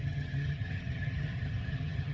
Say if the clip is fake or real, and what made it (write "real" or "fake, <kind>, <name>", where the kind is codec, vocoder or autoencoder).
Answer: fake, vocoder, HiFi-GAN